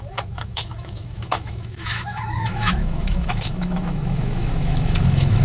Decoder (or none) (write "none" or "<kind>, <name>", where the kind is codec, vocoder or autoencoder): autoencoder, DAC-VAE